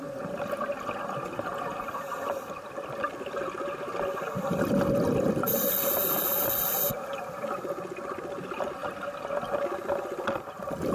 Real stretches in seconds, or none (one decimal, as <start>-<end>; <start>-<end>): 0.0-10.9